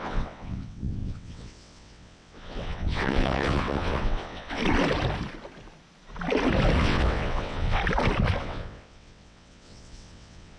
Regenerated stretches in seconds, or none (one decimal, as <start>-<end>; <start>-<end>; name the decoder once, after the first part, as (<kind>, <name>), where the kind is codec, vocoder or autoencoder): 0.0-4.6 (vocoder, WaveNeXt); 6.8-7.8; 8.4-10.6